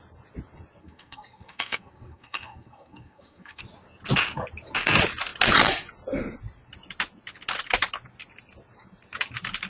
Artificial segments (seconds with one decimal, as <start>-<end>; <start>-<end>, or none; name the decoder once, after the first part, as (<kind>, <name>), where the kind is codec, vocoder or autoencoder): 0.8-3.6 (codec, SNAC)